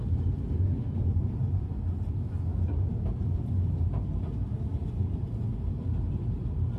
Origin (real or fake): real